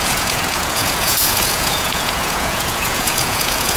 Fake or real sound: fake